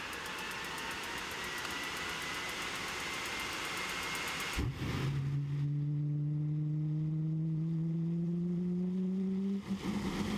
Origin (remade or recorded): recorded